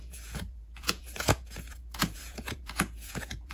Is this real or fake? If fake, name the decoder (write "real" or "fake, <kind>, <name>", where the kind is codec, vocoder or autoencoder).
fake, vocoder, Vocos